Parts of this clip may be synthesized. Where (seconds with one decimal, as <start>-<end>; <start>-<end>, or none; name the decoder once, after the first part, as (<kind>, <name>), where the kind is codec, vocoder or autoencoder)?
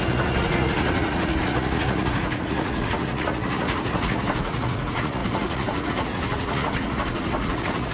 0.0-7.9 (vocoder, Vocos)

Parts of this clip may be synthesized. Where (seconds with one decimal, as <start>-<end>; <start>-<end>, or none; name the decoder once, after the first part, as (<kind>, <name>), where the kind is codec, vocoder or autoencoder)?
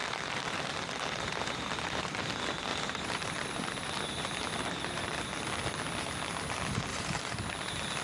2.7-4.0 (vocoder, BigVGAN v2); 6.9-7.4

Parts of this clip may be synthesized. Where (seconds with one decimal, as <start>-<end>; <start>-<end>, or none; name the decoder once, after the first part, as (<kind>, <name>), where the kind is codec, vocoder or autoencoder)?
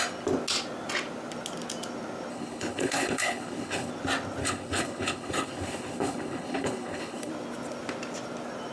2.3-3.9 (codec, HILCodec); 4.4-7.3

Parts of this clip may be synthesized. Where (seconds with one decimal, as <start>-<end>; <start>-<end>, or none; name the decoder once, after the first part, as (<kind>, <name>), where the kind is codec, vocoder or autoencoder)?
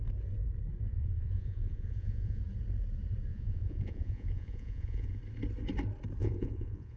0.9-2.4 (vocoder, Vocos); 3.3-5.2; 6.2-7.0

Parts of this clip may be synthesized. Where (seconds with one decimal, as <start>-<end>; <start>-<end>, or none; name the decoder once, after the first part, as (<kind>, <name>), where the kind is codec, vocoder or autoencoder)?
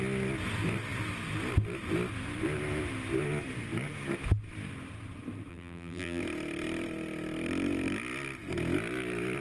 5.5-6.2 (vocoder, BigVGAN v2)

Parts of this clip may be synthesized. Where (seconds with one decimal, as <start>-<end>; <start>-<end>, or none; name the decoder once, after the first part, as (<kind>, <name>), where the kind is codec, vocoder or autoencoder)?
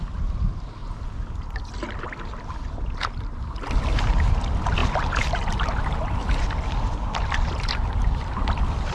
none